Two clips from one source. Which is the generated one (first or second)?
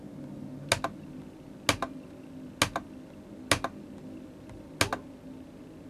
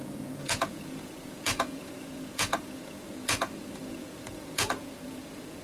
second